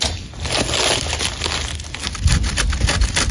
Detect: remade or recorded recorded